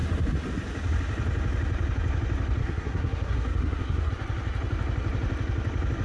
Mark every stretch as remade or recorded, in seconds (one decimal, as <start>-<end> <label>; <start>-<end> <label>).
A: 0.0-2.6 recorded; 2.6-4.1 remade; 4.1-6.0 recorded